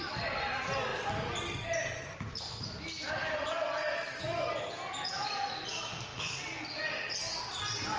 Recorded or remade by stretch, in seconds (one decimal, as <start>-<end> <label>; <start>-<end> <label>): 0.0-8.0 recorded